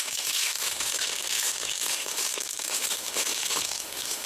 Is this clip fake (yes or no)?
yes